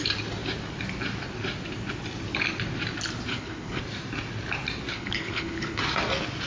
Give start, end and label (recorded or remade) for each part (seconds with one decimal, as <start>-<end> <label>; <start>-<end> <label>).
0.0-3.3 recorded; 3.3-3.8 remade; 3.8-4.9 recorded; 4.9-5.8 remade; 5.8-6.5 recorded